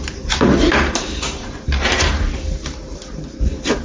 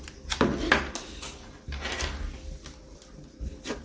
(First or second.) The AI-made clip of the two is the first